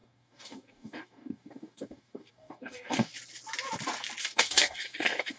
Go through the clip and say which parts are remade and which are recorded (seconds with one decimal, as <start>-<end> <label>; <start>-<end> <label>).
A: 0.0-3.1 remade; 3.1-4.2 recorded; 4.2-5.4 remade

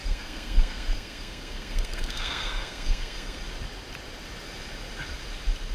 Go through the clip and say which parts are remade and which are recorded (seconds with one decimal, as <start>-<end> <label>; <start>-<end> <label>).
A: 0.0-3.4 remade; 3.4-5.7 recorded

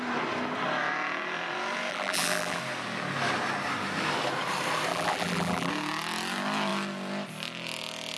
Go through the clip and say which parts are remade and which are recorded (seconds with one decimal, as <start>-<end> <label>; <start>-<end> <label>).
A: 0.0-1.9 recorded; 1.9-2.6 remade; 2.6-4.9 recorded; 4.9-5.7 remade; 5.7-8.2 recorded

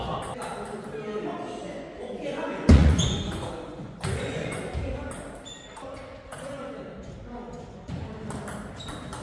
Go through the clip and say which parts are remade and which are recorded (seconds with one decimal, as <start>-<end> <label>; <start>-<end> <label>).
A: 0.0-1.6 recorded; 1.6-4.6 remade; 4.6-6.3 recorded; 6.3-8.0 remade; 8.0-9.2 recorded

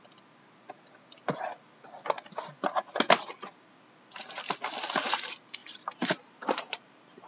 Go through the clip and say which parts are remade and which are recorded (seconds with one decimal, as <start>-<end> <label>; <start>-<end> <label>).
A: 0.0-5.6 recorded; 5.6-7.3 remade

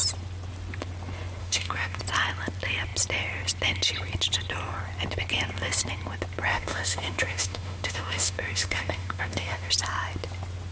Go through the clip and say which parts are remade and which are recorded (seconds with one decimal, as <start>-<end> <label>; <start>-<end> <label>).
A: 0.0-1.4 recorded; 1.4-2.0 remade; 2.0-6.5 recorded; 6.5-9.7 remade; 9.7-10.7 recorded

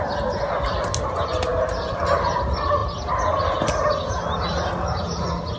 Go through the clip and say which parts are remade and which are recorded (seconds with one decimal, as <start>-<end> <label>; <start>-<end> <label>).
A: 0.0-5.6 recorded